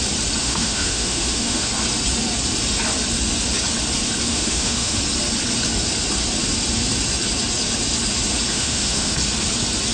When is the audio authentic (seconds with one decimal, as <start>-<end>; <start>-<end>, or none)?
0.0-0.4; 1.7-4.3; 5.0-8.5; 9.2-9.9